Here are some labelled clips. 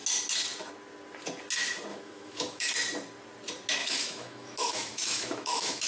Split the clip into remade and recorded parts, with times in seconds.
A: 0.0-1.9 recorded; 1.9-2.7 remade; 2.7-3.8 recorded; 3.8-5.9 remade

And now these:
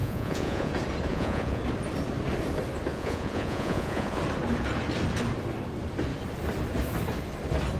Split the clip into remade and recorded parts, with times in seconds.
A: 0.0-0.7 remade; 0.7-1.1 recorded; 1.1-1.6 remade; 1.6-2.9 recorded; 2.9-4.2 remade; 4.2-7.8 recorded